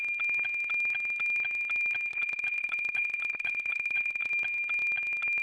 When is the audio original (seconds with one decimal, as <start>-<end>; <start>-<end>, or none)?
0.0-2.1; 4.3-5.4